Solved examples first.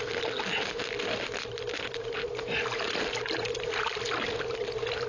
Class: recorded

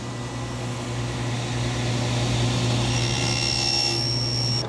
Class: recorded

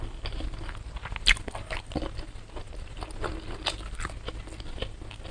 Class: recorded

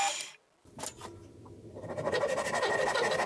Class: recorded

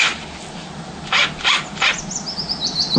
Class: recorded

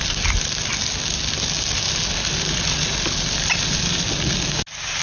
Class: recorded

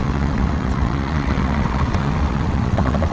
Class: remade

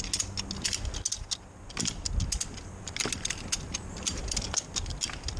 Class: recorded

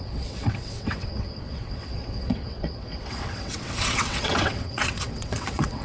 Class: remade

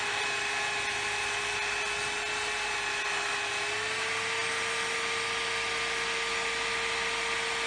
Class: recorded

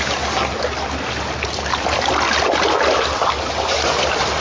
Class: recorded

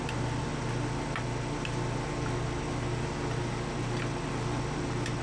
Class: recorded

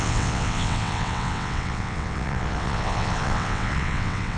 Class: remade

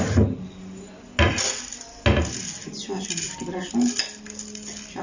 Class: recorded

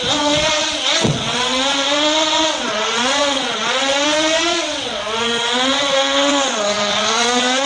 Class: remade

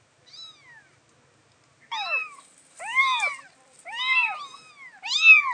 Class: recorded